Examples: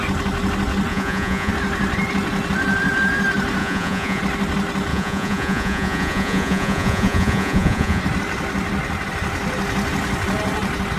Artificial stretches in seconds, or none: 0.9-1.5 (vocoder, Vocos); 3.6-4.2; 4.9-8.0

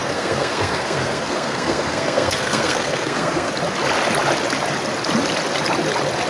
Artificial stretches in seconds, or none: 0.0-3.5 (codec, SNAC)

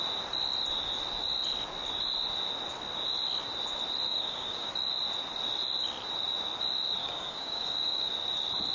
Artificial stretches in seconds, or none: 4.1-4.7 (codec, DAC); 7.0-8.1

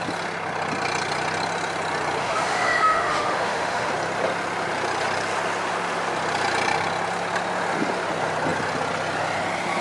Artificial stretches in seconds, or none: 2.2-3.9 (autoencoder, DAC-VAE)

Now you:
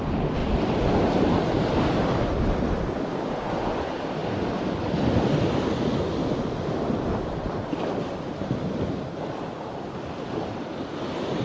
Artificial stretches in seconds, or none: none